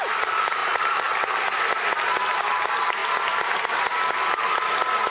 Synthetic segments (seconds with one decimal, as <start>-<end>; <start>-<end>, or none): none